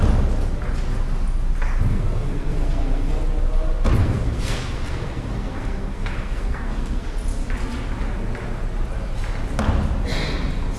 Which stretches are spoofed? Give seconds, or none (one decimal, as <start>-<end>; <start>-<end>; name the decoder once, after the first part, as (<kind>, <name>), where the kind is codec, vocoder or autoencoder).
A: 1.9-3.1 (codec, SNAC); 4.0-7.2